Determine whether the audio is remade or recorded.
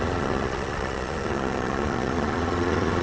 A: remade